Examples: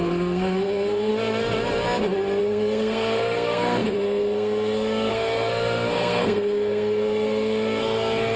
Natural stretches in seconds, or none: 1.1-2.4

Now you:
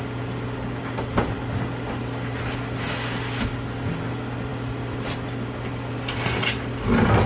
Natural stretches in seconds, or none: 0.0-7.3

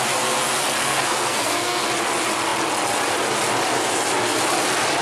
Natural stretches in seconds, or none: 0.0-0.8; 1.8-5.0

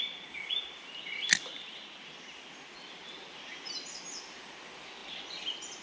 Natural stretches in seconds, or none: 0.0-5.8

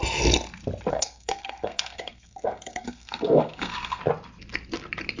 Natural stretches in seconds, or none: 0.0-0.9; 4.0-5.2

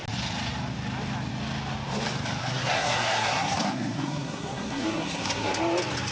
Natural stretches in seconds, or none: 0.0-2.4; 5.6-6.1

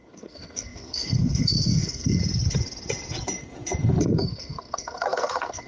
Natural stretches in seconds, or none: 2.2-4.0

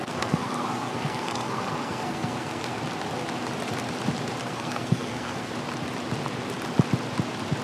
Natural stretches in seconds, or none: 2.8-4.4; 5.5-7.6